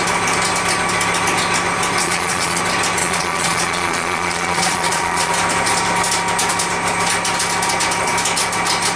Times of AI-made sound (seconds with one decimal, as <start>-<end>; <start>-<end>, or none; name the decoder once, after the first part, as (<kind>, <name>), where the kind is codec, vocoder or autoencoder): 2.0-2.6 (vocoder, Vocos); 3.0-5.3